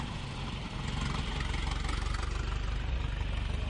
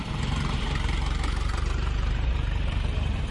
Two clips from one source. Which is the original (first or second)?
first